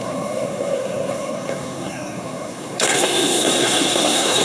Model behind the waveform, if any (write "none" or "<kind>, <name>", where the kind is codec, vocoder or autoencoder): codec, SNAC